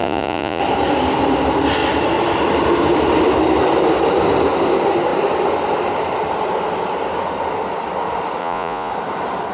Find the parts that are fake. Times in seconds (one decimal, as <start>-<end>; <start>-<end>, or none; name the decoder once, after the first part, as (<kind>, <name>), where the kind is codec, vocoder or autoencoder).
0.0-0.6 (vocoder, Vocos); 8.4-8.9